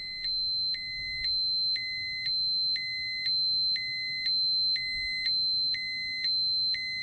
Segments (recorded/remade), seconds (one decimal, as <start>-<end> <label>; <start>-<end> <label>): 0.0-7.0 recorded